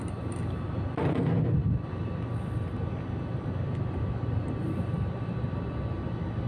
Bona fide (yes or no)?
yes